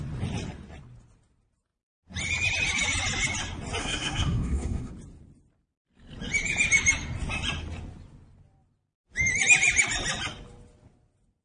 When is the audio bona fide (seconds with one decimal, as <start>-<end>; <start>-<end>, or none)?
0.0-3.8; 4.9-11.4